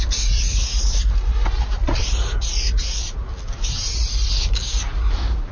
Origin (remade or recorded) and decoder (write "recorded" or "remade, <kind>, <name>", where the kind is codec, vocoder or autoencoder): recorded